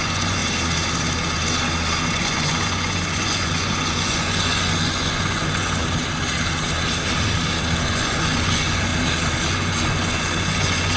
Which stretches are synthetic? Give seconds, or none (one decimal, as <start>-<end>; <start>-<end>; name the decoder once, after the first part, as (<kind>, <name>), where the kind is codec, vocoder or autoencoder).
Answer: 0.0-0.4 (vocoder, Vocos); 2.1-5.8; 7.9-8.9; 9.5-11.0